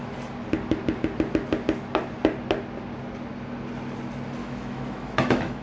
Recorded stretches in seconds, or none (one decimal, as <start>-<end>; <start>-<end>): 0.0-4.4